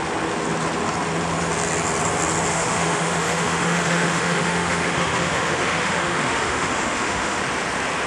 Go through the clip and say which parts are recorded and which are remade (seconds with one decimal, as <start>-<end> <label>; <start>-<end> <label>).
0.0-2.5 recorded; 2.5-7.4 remade; 7.4-8.1 recorded